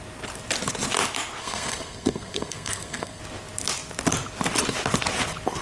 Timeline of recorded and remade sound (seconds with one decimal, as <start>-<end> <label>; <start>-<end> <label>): 0.0-1.4 recorded; 1.4-3.2 remade; 3.2-5.6 recorded